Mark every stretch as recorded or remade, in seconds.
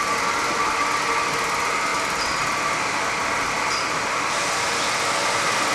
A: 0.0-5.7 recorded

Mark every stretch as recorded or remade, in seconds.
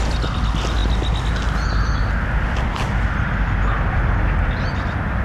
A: 0.0-5.2 recorded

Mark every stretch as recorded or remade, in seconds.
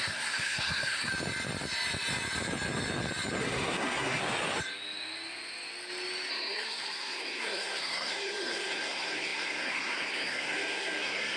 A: 0.0-1.1 remade; 1.1-3.4 recorded; 3.4-4.2 remade; 4.2-6.3 recorded; 6.3-11.4 remade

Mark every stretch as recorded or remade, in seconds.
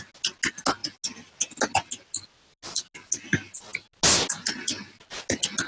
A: 0.0-5.7 recorded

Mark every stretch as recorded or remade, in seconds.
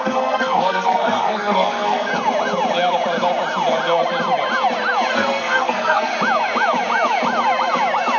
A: 0.0-2.1 remade; 2.1-5.1 recorded; 5.1-6.1 remade; 6.1-8.2 recorded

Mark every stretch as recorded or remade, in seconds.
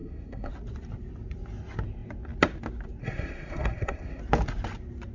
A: 0.0-0.5 remade; 0.5-3.0 recorded; 3.0-4.2 remade; 4.2-5.1 recorded